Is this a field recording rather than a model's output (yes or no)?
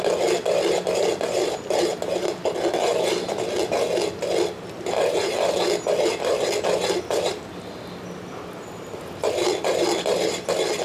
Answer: yes